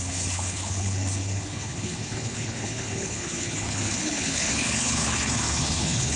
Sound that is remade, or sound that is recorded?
remade